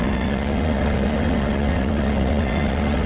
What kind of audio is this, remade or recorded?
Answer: remade